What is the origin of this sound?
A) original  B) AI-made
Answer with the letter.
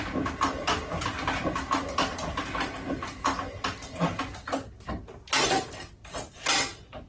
A